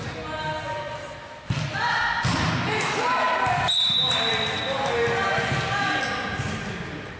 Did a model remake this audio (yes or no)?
no